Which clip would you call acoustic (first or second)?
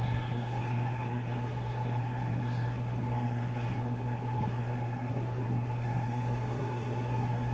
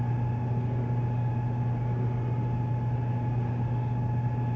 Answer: second